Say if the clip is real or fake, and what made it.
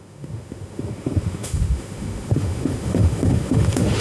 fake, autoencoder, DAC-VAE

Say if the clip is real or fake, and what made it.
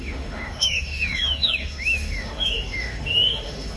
fake, autoencoder, DAC-VAE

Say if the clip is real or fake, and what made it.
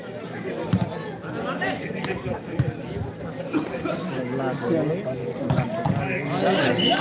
real